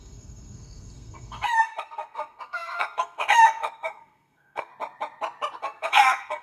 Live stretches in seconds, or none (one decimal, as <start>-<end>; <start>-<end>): 4.7-5.6